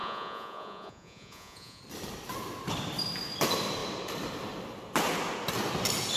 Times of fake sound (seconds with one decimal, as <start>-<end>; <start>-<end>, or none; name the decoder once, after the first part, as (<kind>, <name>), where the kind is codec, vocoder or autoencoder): 0.0-1.8 (vocoder, Vocos)